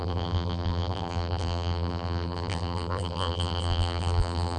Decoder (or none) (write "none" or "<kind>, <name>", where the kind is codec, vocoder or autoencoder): vocoder, BigVGAN v2